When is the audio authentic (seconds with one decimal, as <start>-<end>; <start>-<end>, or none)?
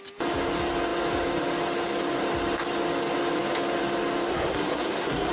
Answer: 0.0-4.3